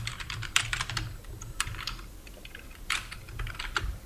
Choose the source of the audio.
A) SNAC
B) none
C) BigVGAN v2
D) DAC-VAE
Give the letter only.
C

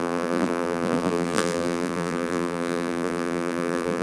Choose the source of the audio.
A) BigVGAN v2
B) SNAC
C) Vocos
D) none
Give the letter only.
A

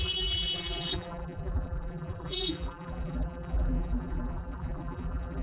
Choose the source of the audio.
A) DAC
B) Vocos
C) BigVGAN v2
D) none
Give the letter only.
C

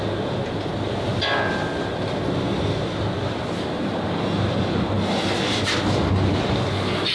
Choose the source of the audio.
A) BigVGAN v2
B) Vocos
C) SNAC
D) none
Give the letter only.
D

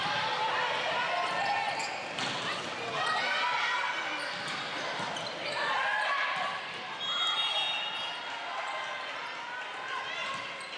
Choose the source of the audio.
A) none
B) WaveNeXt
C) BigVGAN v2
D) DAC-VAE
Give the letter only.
A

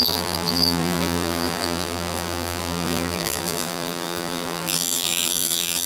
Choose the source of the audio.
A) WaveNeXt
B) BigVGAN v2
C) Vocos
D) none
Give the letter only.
B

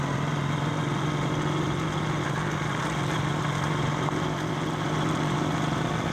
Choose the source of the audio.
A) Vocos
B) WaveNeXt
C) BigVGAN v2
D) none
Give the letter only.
D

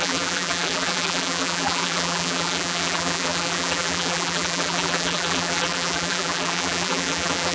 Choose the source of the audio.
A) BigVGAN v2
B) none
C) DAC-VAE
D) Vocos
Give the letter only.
A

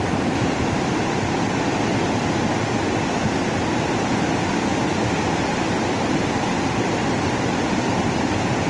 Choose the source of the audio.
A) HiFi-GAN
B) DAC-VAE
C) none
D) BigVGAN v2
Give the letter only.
D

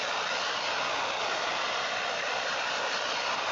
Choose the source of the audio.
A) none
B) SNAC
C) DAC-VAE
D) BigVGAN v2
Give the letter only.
A